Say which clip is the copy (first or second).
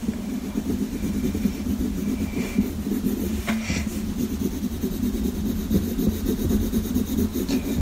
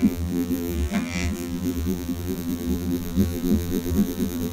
second